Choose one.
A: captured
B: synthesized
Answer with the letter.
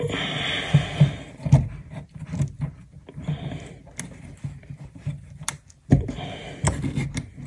A